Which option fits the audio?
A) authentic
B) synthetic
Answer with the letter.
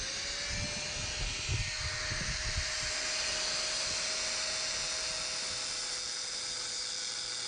A